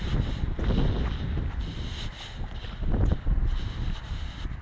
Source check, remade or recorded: recorded